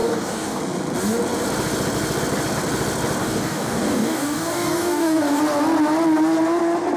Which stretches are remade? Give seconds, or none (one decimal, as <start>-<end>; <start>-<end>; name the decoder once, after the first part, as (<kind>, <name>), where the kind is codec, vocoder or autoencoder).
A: 0.0-0.6 (codec, DAC); 3.2-5.4